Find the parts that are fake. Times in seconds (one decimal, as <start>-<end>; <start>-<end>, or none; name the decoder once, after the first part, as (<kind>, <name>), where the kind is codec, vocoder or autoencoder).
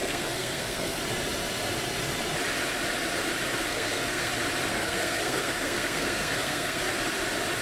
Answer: 0.0-1.0 (codec, SNAC); 3.7-4.3; 4.7-6.8